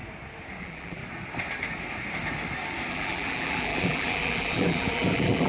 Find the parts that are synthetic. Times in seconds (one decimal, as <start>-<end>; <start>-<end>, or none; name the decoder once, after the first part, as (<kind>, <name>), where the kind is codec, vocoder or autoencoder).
0.6-1.0 (vocoder, BigVGAN v2); 2.9-5.5

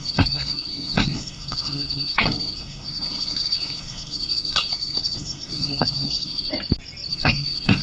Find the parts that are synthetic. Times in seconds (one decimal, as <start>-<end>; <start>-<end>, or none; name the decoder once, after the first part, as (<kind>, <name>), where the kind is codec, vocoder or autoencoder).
0.0-6.5 (codec, SNAC); 7.1-7.8

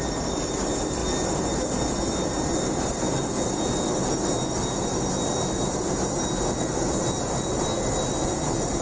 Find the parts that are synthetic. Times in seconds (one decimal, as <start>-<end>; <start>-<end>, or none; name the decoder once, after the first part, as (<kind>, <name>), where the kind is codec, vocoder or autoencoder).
none

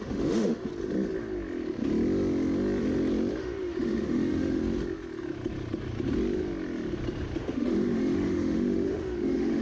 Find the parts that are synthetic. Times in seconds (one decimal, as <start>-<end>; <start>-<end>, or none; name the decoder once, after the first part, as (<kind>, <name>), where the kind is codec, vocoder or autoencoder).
0.0-0.7 (autoencoder, DAC-VAE); 3.4-4.6; 7.4-9.6